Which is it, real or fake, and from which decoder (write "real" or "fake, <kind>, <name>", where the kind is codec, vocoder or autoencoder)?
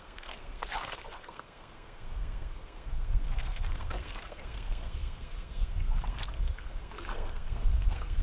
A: fake, codec, SNAC